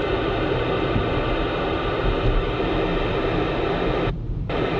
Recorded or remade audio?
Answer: recorded